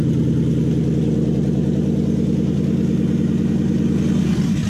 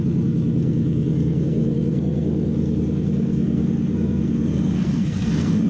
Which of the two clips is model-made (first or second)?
second